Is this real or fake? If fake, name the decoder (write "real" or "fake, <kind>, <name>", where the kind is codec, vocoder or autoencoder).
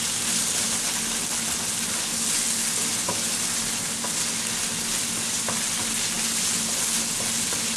real